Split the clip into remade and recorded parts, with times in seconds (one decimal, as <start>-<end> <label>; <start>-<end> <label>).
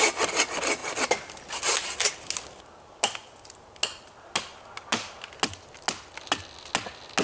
0.0-7.2 recorded